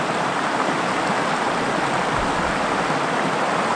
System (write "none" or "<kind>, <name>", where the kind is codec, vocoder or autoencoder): none